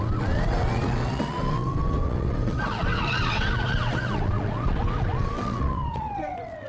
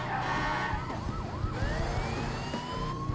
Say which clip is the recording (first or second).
second